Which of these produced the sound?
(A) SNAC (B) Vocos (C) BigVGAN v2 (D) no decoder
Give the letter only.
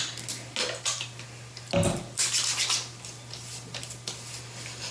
D